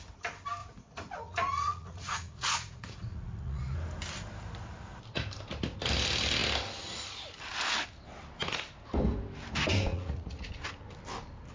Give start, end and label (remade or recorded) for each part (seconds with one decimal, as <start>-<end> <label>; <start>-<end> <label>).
0.0-0.6 recorded; 0.6-3.6 remade; 3.6-9.9 recorded; 9.9-10.5 remade; 10.5-11.5 recorded